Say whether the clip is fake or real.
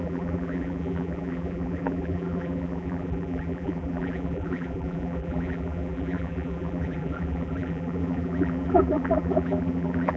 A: fake